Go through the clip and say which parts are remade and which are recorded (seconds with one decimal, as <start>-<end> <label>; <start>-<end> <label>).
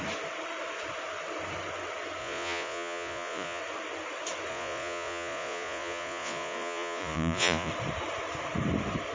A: 0.0-2.2 recorded; 2.2-3.6 remade; 3.6-4.5 recorded; 4.5-7.7 remade; 7.7-9.1 recorded